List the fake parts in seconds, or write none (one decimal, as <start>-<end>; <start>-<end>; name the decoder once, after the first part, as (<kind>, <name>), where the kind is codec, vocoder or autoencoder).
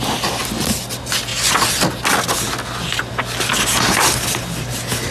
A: none